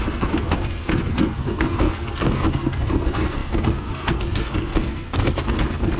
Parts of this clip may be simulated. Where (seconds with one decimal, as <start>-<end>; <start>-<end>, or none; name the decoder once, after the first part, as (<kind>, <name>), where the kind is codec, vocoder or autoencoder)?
0.0-6.0 (codec, SNAC)